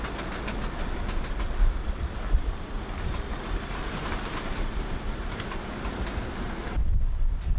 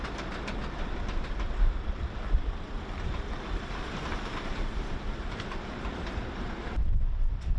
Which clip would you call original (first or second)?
first